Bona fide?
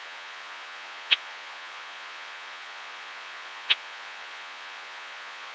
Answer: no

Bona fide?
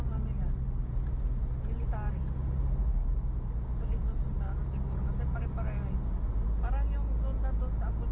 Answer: yes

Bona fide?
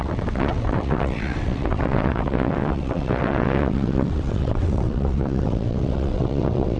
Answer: no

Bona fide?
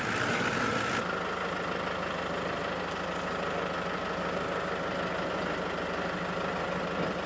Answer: yes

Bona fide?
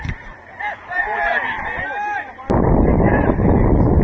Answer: yes